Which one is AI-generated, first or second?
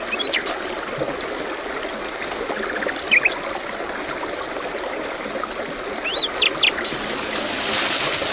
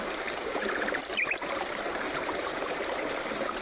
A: second